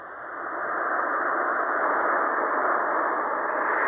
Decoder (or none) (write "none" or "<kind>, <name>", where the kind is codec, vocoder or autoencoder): none